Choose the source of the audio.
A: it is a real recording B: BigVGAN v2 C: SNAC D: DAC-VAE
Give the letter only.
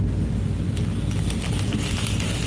A